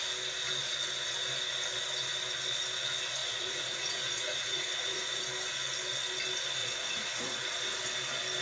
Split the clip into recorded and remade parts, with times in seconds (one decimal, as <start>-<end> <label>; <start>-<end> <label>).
0.0-3.2 recorded; 3.2-5.2 remade; 5.2-6.6 recorded; 6.6-7.8 remade; 7.8-8.4 recorded